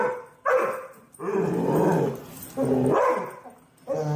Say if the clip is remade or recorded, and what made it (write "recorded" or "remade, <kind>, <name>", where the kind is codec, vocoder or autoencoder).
recorded